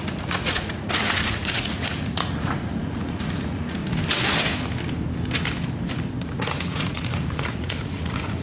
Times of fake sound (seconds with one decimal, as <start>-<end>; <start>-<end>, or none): 0.0-3.8; 6.2-8.4